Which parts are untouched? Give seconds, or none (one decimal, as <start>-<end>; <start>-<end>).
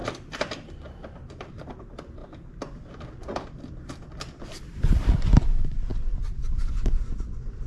none